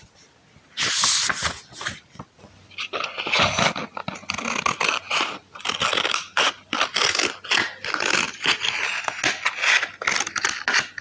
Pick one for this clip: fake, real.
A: real